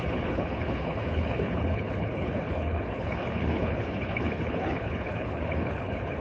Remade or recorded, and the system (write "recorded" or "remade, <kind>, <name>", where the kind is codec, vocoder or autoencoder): remade, codec, HILCodec